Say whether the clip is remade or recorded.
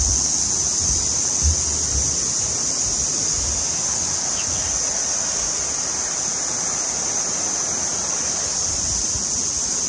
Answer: recorded